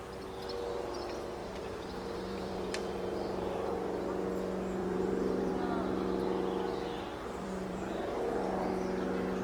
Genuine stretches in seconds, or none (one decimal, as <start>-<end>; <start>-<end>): 0.0-1.4; 3.7-4.8; 5.5-7.1; 8.7-9.4